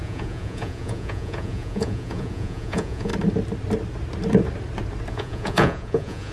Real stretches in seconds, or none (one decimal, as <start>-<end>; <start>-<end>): 3.1-5.1